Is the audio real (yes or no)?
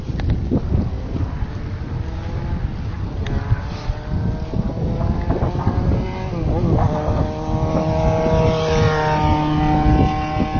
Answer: yes